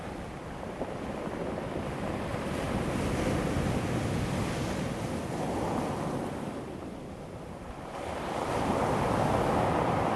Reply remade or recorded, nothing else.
recorded